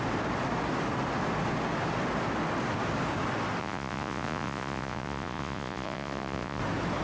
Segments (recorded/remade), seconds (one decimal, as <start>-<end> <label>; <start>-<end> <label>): 0.0-3.6 recorded; 3.6-6.6 remade; 6.6-7.0 recorded